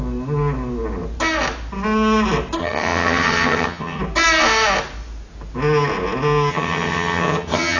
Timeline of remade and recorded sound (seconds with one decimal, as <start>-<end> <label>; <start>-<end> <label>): 0.0-2.6 recorded; 2.6-4.0 remade; 4.0-6.5 recorded; 6.5-7.8 remade